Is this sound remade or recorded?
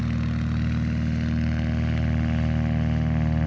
recorded